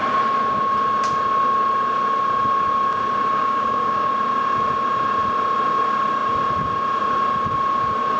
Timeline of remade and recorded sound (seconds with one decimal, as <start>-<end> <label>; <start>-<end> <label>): 0.0-3.3 recorded; 3.3-4.1 remade; 4.1-8.2 recorded